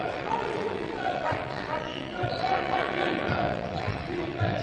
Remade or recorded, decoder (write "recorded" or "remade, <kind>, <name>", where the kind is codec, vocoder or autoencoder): remade, vocoder, WaveNeXt